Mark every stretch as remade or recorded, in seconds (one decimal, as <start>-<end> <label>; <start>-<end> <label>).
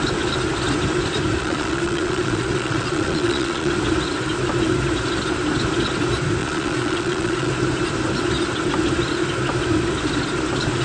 0.0-1.4 recorded; 1.4-3.7 remade; 3.7-6.4 recorded; 6.4-7.5 remade; 7.5-10.8 recorded